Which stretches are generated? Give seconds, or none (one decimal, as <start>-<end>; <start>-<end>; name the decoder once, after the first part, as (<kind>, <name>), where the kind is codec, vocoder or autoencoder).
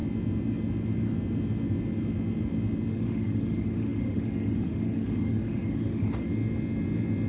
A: 2.9-6.3 (autoencoder, DAC-VAE)